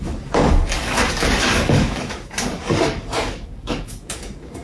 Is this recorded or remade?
remade